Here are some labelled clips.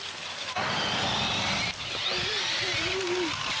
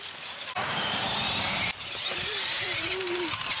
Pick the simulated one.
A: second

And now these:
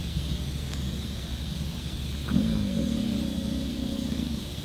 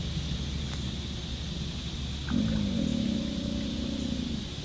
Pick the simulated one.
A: first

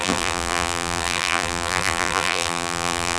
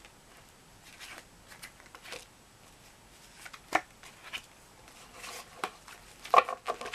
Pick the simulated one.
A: first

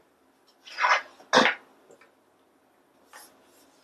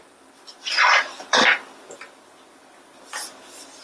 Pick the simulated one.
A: second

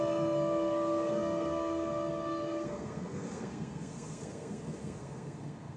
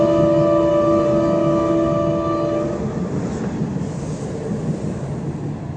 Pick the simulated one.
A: first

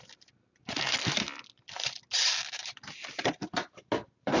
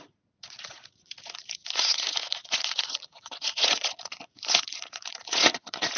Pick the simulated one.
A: second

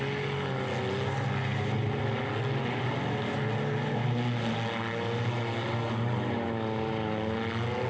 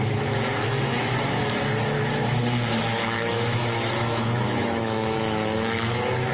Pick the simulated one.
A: second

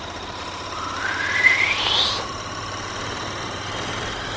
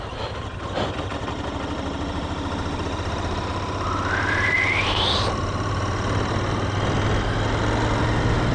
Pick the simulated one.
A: first